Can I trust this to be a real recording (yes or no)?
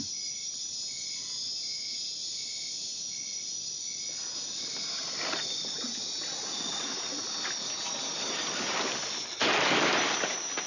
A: yes